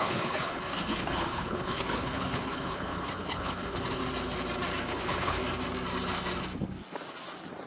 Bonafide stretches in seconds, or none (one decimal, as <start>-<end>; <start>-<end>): 4.0-4.9; 5.4-7.7